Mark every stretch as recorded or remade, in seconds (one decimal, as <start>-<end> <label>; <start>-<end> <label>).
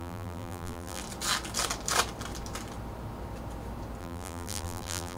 0.0-1.0 remade; 1.0-4.0 recorded; 4.0-5.2 remade